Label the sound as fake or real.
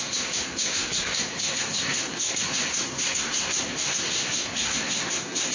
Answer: fake